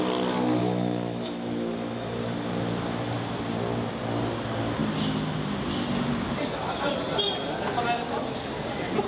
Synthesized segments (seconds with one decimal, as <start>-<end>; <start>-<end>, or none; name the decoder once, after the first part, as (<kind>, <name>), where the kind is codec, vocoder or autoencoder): 0.6-2.2 (autoencoder, DAC-VAE)